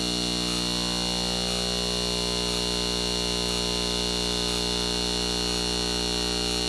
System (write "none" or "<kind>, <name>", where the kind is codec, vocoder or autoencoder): none